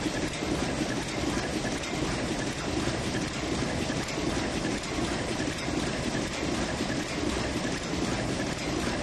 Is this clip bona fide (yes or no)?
yes